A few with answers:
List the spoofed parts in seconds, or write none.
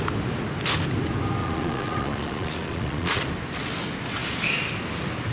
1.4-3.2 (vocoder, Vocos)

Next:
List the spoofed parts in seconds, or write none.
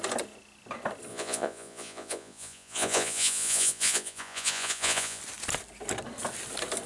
1.1-5.2 (vocoder, Vocos)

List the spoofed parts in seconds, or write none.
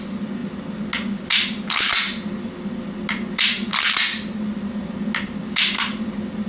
none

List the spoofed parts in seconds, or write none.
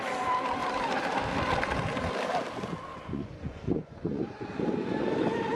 2.9-4.4 (vocoder, Vocos)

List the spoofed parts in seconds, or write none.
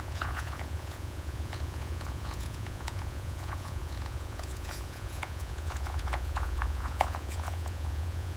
0.0-8.4 (vocoder, Vocos)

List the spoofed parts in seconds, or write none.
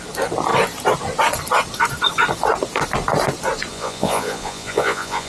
3.7-5.3 (vocoder, Vocos)